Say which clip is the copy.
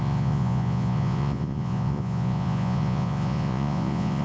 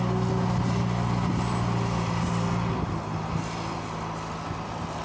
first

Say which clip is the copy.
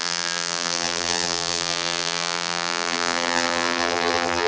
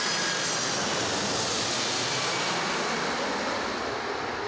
first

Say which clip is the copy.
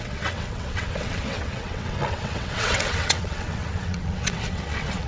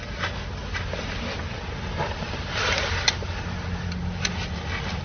first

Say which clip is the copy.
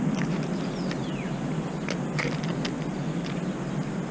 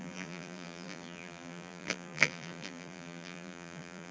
second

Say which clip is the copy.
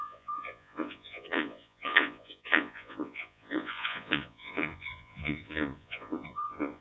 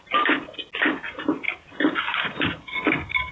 first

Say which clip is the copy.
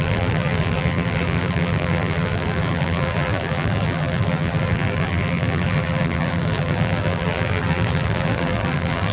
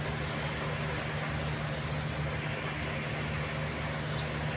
first